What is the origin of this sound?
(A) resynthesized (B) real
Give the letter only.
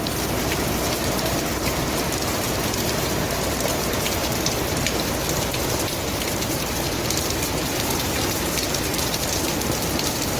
A